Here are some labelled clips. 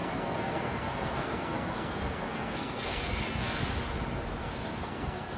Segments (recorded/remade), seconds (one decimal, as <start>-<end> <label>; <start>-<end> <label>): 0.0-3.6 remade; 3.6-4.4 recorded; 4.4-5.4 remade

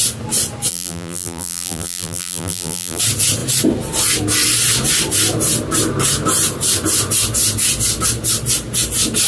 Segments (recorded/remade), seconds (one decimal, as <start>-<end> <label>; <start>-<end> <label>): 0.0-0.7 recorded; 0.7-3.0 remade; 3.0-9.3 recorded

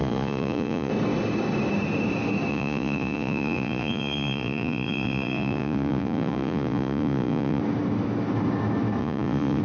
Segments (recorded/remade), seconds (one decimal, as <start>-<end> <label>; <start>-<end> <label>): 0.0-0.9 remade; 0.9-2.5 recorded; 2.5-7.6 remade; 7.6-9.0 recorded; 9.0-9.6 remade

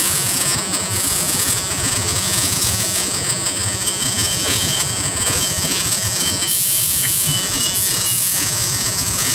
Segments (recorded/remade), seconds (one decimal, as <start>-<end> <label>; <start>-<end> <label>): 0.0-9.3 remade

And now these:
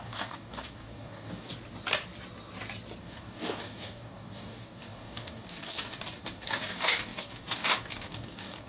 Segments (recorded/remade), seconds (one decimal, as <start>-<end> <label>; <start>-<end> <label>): 0.0-1.5 remade; 1.5-3.0 recorded; 3.0-8.7 remade

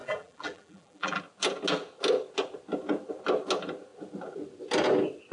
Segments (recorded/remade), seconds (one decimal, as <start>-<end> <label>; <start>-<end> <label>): 0.0-1.2 remade; 1.2-5.3 recorded

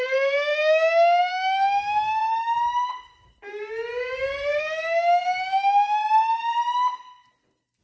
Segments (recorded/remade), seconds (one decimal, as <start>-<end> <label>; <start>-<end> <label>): 0.0-2.2 remade; 2.2-4.6 recorded; 4.6-6.0 remade; 6.0-7.8 recorded